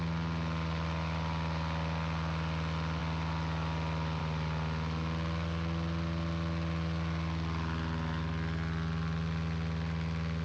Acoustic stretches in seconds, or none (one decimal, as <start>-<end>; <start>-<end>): 0.0-10.4